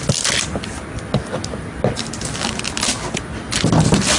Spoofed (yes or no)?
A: no